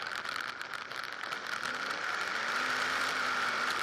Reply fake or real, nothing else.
real